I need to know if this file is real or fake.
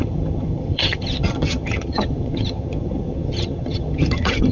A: fake